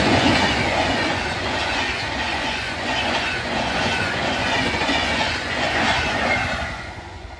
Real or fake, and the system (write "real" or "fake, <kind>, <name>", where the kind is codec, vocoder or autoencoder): fake, vocoder, Vocos